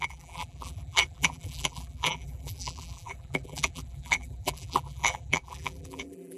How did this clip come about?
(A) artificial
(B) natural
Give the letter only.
A